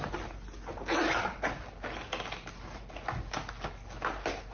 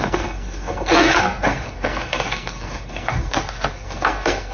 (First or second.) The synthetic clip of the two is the second